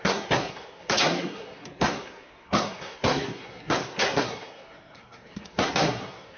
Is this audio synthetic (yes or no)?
yes